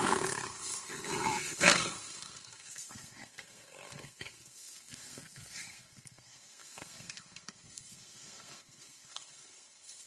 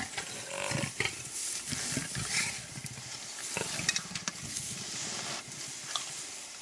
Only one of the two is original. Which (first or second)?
second